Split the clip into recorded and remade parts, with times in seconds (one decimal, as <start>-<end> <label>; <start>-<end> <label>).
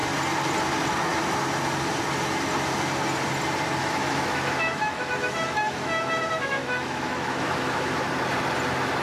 0.0-3.8 recorded; 3.8-8.0 remade; 8.0-9.0 recorded